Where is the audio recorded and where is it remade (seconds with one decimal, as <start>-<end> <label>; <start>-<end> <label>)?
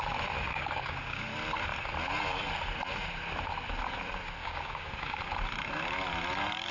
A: 0.0-0.5 recorded; 0.5-1.2 remade; 1.2-4.4 recorded; 4.4-5.2 remade; 5.2-6.7 recorded